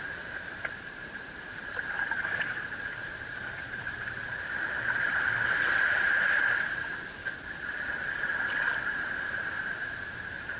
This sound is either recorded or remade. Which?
remade